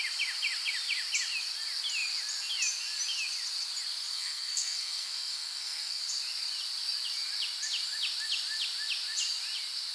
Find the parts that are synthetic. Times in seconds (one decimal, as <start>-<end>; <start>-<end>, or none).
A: 4.1-6.0